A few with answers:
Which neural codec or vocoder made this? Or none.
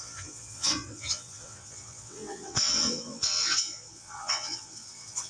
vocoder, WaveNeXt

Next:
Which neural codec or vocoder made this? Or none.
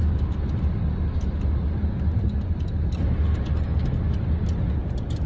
none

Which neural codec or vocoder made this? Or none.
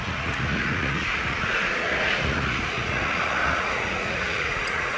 vocoder, Vocos